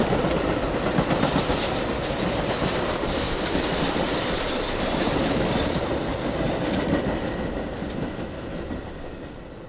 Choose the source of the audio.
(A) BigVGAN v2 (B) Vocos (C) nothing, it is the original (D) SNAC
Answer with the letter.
C